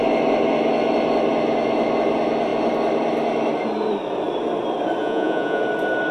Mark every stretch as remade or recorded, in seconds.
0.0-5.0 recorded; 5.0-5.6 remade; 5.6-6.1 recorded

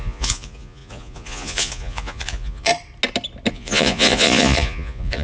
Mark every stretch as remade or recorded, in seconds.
0.0-2.7 remade; 2.7-3.5 recorded; 3.5-5.2 remade